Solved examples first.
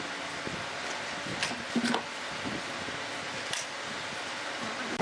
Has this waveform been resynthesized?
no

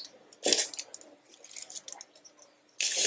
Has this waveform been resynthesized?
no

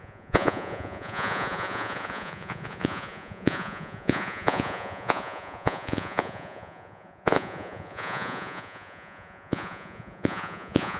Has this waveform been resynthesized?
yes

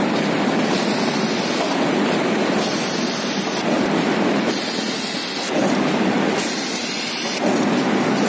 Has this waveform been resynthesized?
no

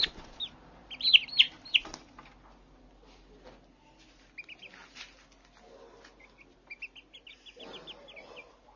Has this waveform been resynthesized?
no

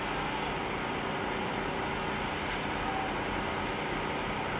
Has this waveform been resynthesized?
no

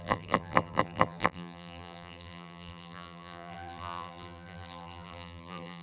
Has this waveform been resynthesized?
yes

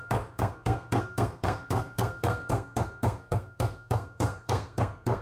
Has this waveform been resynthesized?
yes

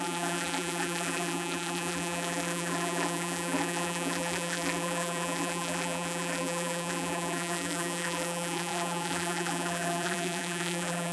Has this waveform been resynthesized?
yes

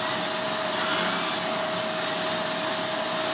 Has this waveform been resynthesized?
no